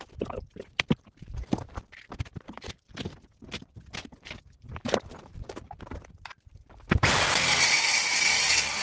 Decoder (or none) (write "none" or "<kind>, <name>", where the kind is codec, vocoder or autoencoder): vocoder, BigVGAN v2